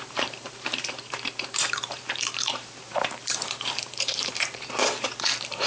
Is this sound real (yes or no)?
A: no